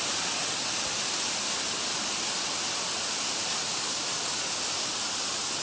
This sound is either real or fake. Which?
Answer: real